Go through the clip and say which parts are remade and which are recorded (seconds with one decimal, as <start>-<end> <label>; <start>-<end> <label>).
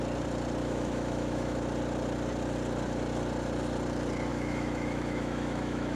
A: 0.0-0.6 recorded; 0.6-1.6 remade; 1.6-4.3 recorded; 4.3-6.0 remade